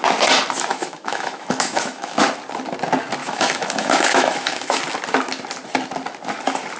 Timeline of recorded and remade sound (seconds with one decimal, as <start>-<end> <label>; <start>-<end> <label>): 0.0-0.7 recorded; 0.7-2.2 remade; 2.2-3.2 recorded; 3.2-4.8 remade; 4.8-6.8 recorded